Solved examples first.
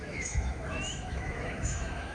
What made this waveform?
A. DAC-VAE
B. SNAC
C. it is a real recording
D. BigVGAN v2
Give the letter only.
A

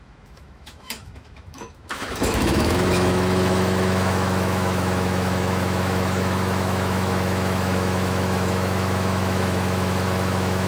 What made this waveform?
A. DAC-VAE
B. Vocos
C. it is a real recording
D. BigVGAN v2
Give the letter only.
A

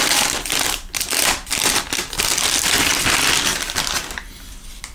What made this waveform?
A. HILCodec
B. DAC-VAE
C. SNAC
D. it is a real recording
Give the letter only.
D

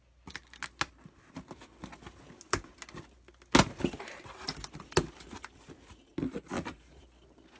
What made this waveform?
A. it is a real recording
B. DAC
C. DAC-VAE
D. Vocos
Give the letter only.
A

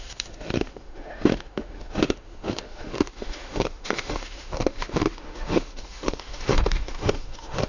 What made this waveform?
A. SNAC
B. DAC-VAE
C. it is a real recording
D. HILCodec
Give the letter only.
B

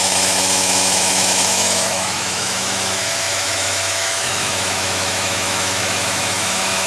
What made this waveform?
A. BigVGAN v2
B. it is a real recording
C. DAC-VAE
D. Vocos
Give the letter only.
C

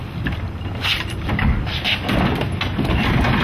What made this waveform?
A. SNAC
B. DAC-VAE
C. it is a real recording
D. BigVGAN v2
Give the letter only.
C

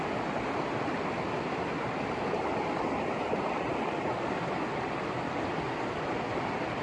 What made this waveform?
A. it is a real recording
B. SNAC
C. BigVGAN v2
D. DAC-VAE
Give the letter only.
A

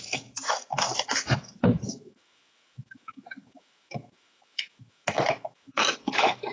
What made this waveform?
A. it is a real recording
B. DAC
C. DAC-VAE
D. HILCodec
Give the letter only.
C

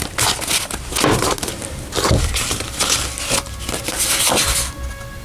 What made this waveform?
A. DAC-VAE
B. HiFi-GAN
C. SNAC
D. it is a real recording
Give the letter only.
D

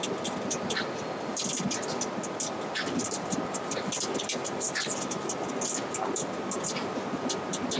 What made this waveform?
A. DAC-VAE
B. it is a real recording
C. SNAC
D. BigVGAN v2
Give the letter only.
B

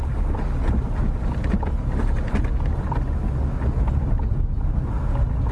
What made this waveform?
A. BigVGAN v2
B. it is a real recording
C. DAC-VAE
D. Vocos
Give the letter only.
B